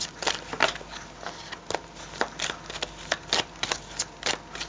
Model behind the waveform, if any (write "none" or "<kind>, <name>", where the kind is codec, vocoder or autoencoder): none